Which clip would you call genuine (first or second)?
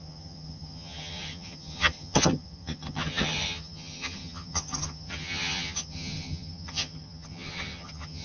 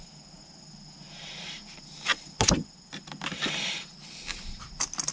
second